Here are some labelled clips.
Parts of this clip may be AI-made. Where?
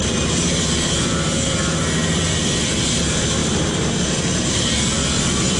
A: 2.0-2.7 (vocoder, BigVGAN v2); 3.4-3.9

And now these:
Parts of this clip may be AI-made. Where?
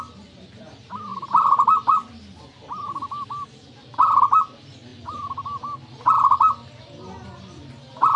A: 1.1-4.2 (vocoder, BigVGAN v2)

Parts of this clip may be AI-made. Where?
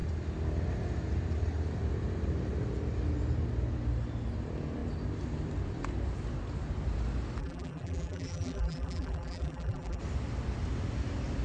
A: 7.4-10.0 (vocoder, BigVGAN v2)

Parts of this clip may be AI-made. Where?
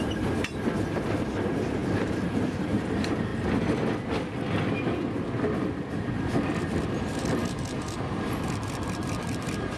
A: 0.0-1.8 (vocoder, BigVGAN v2); 2.3-3.3; 5.9-9.8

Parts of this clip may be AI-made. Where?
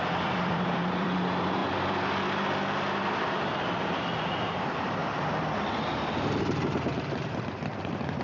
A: 0.0-1.6 (vocoder, BigVGAN v2); 3.2-5.0; 6.4-8.2